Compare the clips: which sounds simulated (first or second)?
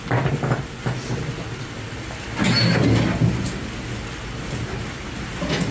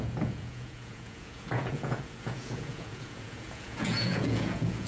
second